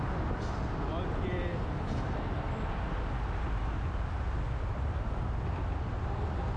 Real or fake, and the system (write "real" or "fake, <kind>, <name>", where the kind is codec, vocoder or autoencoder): real